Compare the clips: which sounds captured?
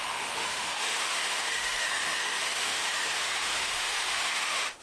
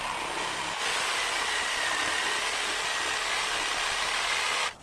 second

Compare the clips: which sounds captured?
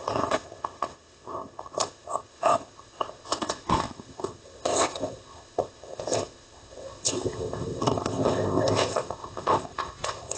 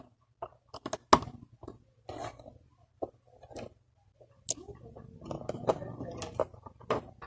second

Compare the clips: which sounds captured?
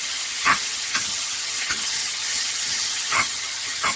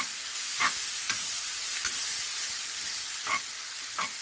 second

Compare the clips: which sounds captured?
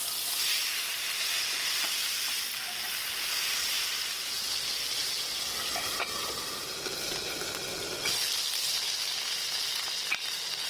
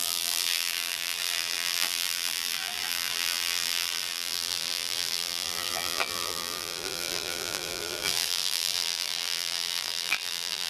first